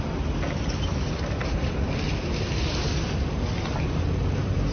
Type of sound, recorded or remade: recorded